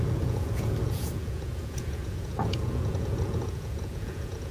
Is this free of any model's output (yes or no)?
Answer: no